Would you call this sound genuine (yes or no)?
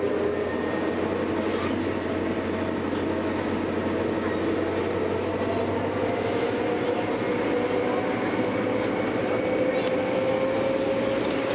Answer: yes